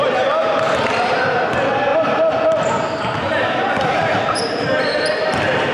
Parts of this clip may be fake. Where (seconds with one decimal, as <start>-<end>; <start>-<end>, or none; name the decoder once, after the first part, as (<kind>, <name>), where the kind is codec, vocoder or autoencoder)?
none